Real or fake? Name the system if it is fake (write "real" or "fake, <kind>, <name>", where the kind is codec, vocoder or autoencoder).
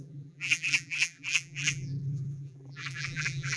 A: fake, vocoder, BigVGAN v2